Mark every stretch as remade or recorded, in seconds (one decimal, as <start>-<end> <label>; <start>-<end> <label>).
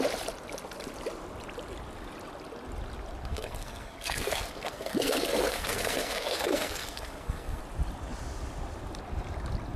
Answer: 0.0-3.2 recorded; 3.2-7.6 remade; 7.6-9.8 recorded